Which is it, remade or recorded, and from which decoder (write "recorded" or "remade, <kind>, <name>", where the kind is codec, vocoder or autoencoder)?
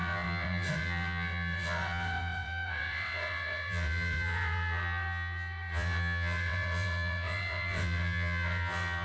remade, vocoder, WaveNeXt